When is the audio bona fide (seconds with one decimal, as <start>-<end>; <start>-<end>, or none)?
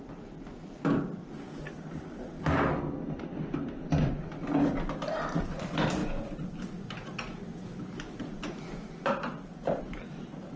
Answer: 0.0-10.6